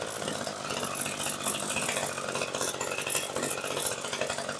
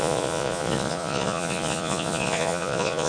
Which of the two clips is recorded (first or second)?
first